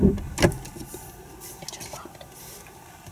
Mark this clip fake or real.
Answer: real